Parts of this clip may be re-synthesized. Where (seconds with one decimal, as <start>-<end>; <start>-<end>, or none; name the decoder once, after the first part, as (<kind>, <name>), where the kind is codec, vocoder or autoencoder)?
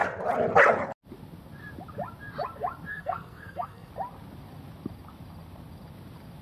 2.9-3.9 (codec, SNAC)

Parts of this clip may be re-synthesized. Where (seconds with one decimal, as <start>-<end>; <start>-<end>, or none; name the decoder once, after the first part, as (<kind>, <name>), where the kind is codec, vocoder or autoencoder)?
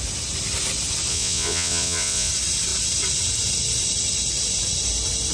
1.1-2.3 (vocoder, Vocos)